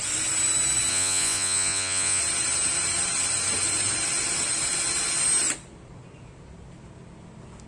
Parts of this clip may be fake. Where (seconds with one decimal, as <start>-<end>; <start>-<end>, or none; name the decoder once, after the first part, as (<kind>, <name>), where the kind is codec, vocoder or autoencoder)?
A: 0.9-2.2 (vocoder, Vocos)